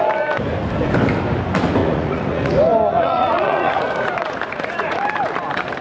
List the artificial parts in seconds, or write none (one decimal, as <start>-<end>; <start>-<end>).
1.8-2.5; 2.9-5.0